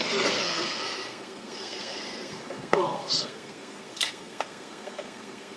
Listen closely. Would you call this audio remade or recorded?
remade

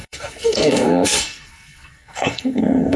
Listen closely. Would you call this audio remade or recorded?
remade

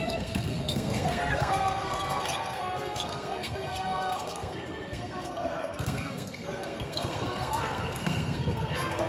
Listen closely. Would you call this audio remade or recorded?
remade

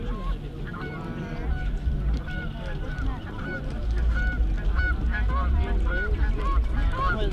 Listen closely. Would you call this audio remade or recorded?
recorded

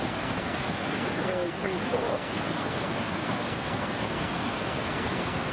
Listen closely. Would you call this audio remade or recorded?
remade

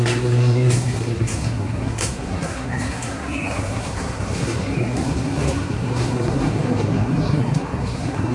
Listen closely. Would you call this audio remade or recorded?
remade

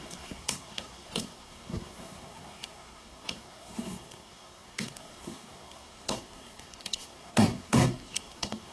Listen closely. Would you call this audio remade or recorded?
remade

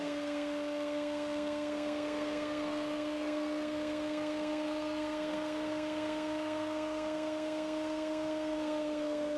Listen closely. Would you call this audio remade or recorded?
remade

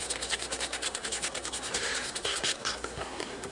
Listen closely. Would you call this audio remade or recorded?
remade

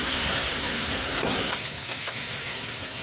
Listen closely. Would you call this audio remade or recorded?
remade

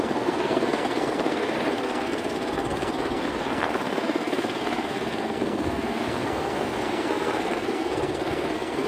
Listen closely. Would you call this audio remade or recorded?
remade